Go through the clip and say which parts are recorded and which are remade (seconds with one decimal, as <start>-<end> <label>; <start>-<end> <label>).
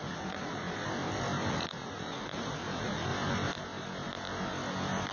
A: 0.0-0.8 remade; 0.8-1.5 recorded; 1.5-3.1 remade; 3.1-5.1 recorded